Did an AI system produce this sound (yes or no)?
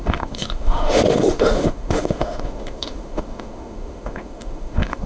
yes